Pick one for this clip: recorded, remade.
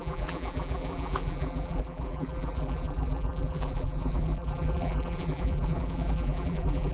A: remade